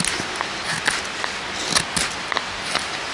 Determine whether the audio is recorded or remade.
recorded